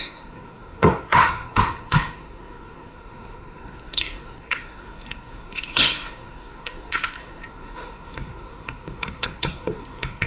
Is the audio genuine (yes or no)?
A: no